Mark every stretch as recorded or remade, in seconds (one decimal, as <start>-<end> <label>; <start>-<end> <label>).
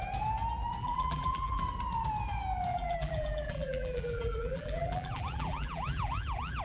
0.0-0.8 recorded; 0.8-1.6 remade; 1.6-2.7 recorded; 2.7-6.6 remade